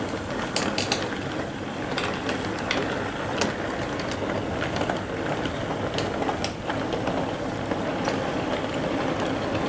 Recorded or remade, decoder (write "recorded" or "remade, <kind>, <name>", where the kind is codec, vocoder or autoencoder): recorded